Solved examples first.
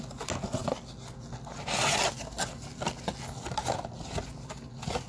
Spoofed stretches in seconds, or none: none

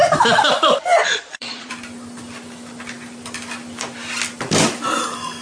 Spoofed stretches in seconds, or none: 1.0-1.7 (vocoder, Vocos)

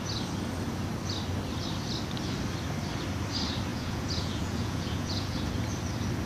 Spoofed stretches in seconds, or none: 3.7-5.4 (vocoder, Vocos)

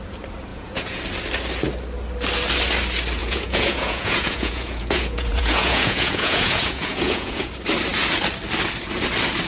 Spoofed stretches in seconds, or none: 0.5-1.0 (vocoder, Vocos); 3.2-7.5